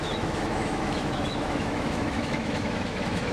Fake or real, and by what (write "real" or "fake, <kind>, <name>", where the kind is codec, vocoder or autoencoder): fake, autoencoder, DAC-VAE